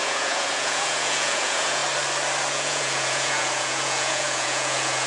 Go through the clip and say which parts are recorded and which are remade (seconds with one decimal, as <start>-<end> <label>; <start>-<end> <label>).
0.0-1.8 remade; 1.8-2.5 recorded; 2.5-5.1 remade